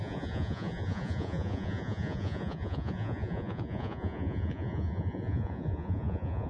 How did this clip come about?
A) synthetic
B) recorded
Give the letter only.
A